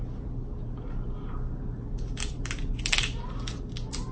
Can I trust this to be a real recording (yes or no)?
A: yes